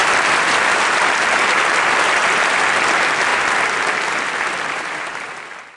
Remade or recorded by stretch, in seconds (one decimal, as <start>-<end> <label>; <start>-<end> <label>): 0.0-1.7 remade; 1.7-5.8 recorded